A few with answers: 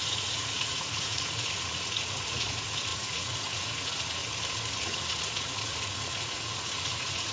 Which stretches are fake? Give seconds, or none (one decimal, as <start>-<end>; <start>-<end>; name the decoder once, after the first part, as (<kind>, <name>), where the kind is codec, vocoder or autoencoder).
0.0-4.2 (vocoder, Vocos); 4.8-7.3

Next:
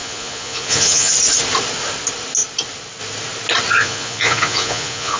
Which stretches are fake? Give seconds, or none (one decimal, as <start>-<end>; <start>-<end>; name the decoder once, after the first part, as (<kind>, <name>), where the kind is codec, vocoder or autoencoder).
0.0-1.1 (vocoder, Vocos); 3.8-5.2

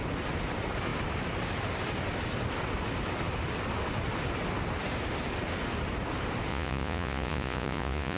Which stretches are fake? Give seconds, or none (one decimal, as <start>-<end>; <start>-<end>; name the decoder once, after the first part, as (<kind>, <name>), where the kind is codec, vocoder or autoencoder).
6.5-8.2 (vocoder, Vocos)

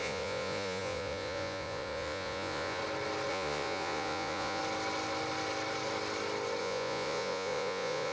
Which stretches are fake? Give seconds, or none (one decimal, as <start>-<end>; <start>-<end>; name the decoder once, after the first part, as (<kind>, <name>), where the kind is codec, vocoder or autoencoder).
0.0-2.8 (vocoder, Vocos); 3.3-4.6; 6.6-8.1

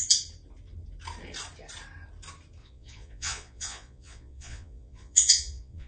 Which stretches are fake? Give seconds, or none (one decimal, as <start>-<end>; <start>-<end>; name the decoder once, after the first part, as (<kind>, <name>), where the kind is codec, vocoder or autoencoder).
2.6-5.9 (vocoder, Vocos)

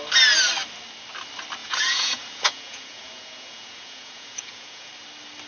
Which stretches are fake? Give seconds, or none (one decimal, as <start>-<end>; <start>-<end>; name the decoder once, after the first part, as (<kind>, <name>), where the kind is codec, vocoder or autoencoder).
1.6-4.9 (vocoder, Vocos)

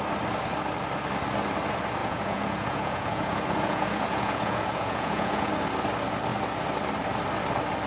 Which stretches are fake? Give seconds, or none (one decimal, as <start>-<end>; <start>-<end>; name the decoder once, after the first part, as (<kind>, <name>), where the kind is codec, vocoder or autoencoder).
2.0-5.5 (vocoder, Vocos)

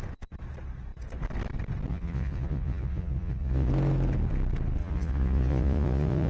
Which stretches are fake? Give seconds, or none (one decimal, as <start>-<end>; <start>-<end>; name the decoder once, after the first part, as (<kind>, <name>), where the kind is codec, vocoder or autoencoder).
1.9-3.7 (vocoder, Vocos); 4.8-6.3